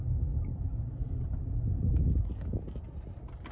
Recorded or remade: recorded